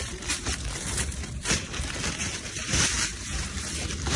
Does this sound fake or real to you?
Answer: fake